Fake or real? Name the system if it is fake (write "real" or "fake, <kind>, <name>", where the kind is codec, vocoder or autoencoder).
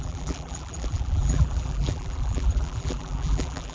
fake, vocoder, BigVGAN v2